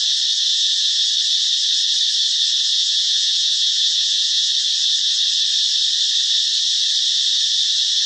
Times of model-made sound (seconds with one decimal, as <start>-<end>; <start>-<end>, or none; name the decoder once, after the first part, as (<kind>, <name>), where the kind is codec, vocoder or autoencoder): 0.5-1.0 (vocoder, Vocos); 2.7-4.5